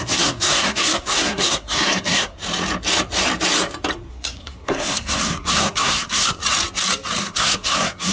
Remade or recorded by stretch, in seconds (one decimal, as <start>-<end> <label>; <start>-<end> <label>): 0.0-2.4 remade; 2.4-4.1 recorded; 4.1-6.4 remade; 6.4-7.2 recorded; 7.2-8.1 remade